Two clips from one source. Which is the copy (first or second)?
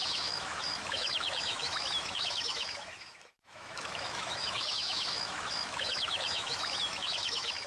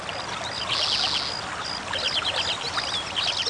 first